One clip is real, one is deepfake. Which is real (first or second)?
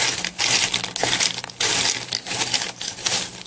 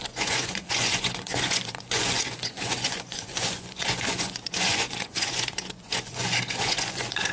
first